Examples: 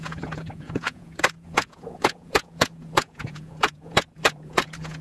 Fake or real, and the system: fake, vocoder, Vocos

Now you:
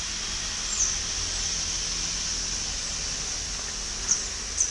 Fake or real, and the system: real